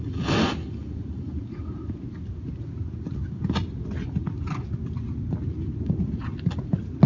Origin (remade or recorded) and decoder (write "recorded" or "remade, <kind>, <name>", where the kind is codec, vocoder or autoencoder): recorded